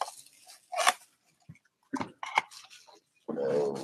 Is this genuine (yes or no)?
yes